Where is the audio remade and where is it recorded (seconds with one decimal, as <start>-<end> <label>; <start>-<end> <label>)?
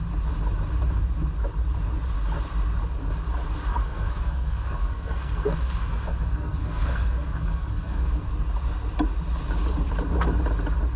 0.0-3.7 recorded; 3.7-8.3 remade; 8.3-11.0 recorded